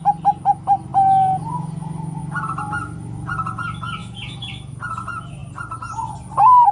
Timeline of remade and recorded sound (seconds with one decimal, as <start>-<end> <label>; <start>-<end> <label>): 0.0-4.0 recorded; 4.0-4.5 remade; 4.5-6.7 recorded